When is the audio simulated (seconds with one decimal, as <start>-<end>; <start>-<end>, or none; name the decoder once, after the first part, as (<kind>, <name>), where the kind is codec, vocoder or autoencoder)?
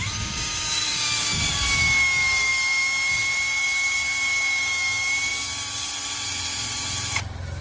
0.0-5.9 (codec, DAC)